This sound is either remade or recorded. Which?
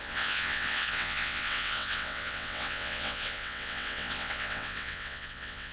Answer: remade